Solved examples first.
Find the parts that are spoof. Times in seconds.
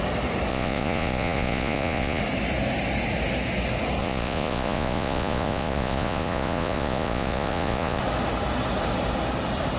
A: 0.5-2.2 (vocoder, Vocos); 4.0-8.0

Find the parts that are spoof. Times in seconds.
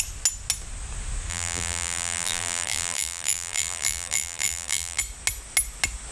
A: 1.3-5.0 (vocoder, BigVGAN v2)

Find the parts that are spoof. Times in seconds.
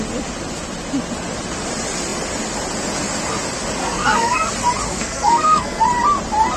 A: 3.8-4.5 (codec, SNAC); 4.9-5.8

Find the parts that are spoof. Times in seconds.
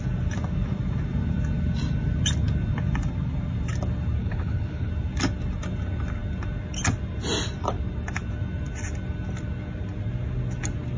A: 4.2-4.9 (codec, HILCodec)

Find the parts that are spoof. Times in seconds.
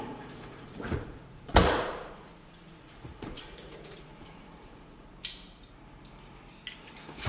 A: 0.0-5.1 (vocoder, Vocos); 6.8-7.3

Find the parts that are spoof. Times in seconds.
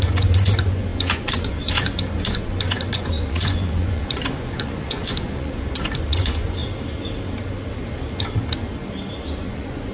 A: 0.0-6.6 (vocoder, Vocos); 9.4-9.9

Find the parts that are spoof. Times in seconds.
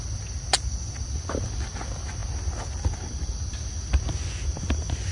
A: none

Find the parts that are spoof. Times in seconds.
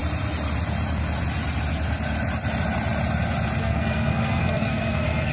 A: 3.6-5.3 (codec, SNAC)